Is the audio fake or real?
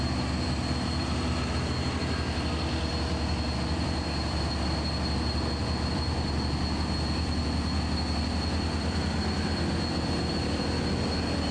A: real